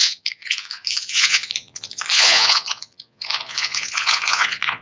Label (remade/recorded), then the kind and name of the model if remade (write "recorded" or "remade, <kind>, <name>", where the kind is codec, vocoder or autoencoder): remade, vocoder, Vocos